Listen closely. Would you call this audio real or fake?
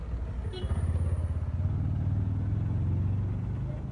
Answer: real